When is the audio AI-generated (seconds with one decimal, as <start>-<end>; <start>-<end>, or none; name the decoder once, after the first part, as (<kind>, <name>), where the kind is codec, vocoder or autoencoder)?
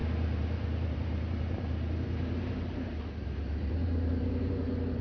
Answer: 0.0-5.0 (vocoder, BigVGAN v2)